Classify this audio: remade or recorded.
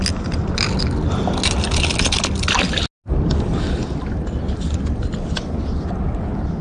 recorded